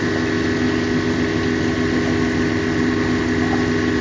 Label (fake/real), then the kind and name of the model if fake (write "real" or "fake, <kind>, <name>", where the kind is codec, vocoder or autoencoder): real